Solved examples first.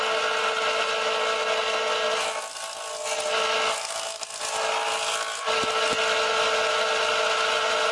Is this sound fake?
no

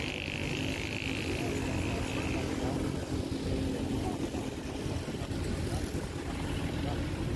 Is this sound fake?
no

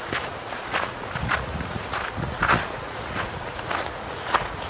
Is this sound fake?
yes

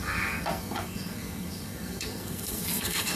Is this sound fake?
yes